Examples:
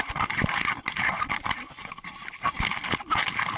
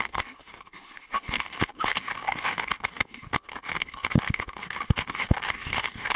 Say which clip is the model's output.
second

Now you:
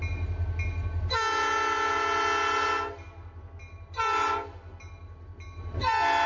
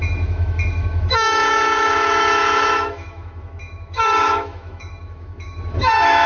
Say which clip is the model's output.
second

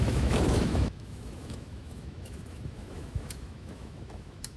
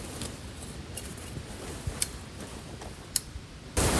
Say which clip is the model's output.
first